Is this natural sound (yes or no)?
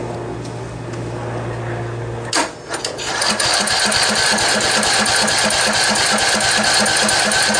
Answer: yes